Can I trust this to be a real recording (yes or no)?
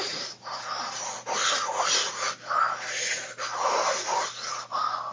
yes